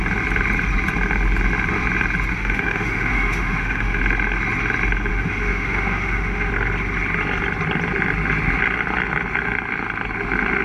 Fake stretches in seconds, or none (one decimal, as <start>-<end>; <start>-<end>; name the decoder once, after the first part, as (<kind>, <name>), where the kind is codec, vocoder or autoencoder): 2.3-4.0 (autoencoder, DAC-VAE); 5.1-6.5